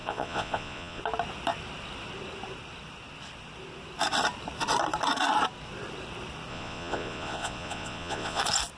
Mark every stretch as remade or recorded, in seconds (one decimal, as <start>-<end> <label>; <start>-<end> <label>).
0.0-1.0 remade; 1.0-6.5 recorded; 6.5-8.4 remade; 8.4-8.8 recorded